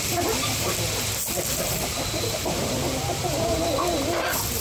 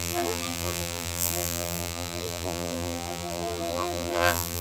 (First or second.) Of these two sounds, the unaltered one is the first